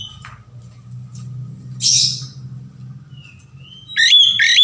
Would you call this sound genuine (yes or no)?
yes